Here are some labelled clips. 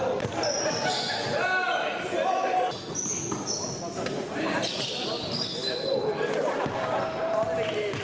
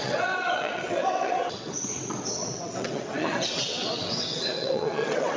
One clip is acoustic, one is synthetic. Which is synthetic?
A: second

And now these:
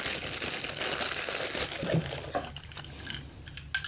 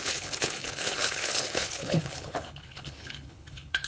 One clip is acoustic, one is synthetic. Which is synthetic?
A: second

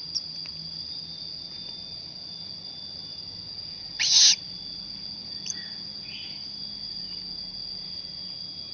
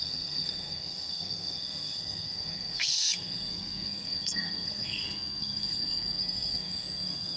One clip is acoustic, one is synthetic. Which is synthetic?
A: second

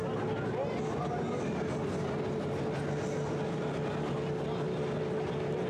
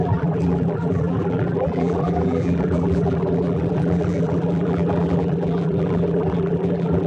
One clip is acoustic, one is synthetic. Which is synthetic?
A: second